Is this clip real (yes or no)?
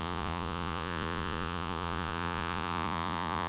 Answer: no